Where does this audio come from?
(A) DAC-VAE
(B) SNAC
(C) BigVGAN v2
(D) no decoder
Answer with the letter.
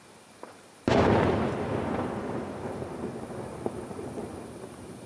D